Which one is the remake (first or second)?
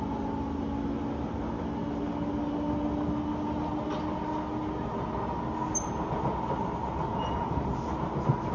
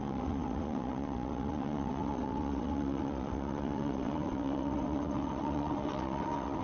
second